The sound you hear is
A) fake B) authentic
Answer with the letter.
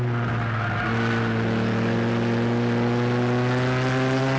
B